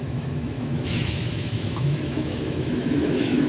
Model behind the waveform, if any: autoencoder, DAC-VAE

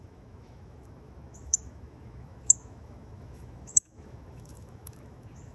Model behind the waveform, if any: autoencoder, DAC-VAE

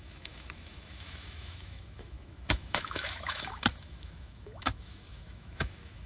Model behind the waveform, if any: autoencoder, DAC-VAE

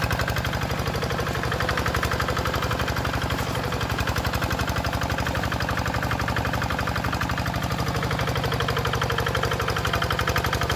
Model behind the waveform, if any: none